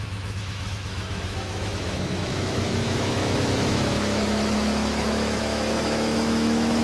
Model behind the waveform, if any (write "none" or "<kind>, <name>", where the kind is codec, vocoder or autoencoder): autoencoder, DAC-VAE